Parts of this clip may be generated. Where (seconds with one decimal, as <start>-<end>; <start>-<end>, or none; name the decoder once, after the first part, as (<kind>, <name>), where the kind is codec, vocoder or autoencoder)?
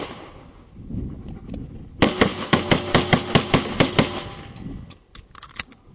none